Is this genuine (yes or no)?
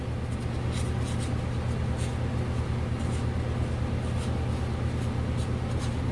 yes